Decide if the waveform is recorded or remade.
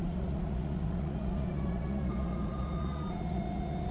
remade